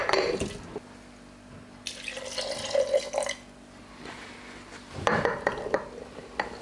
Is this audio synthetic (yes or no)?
no